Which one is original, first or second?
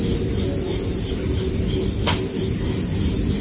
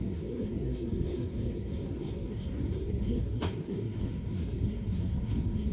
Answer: first